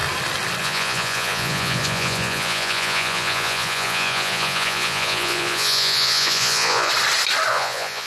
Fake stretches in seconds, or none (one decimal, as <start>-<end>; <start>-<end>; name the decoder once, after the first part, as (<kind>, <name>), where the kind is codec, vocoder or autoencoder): 0.6-6.9 (vocoder, Vocos); 7.5-8.1